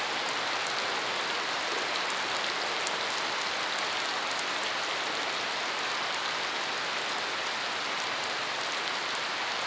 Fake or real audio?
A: real